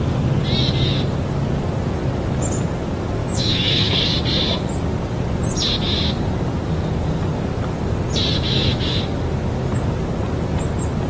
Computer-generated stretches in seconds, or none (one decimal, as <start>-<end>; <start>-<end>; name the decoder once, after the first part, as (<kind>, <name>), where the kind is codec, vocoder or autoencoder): 3.2-3.9 (autoencoder, DAC-VAE); 8.5-9.0